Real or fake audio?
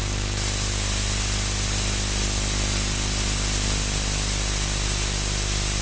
real